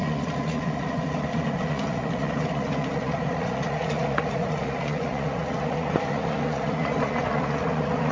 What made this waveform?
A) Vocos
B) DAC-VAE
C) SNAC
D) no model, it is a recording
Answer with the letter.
A